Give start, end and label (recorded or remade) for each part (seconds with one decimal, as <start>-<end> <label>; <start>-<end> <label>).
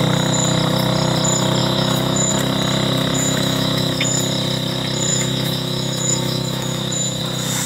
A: 0.0-1.6 recorded; 1.6-2.3 remade; 2.3-3.1 recorded; 3.1-4.1 remade; 4.1-5.1 recorded; 5.1-7.2 remade; 7.2-7.7 recorded